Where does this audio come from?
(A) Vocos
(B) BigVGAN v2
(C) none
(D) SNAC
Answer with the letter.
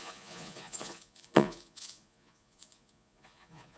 A